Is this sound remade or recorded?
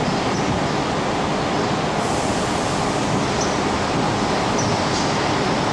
recorded